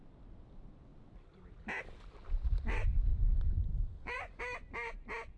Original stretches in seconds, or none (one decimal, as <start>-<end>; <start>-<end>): 0.0-3.1; 4.4-5.4